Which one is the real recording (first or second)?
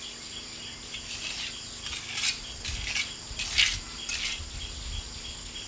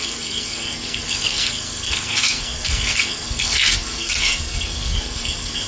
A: first